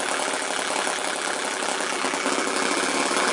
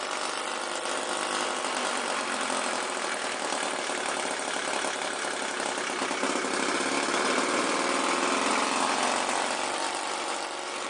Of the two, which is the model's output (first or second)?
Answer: first